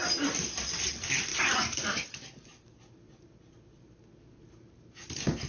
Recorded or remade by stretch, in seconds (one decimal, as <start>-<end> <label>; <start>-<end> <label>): 0.0-0.9 remade; 0.9-1.3 recorded; 1.3-4.6 remade; 4.6-5.5 recorded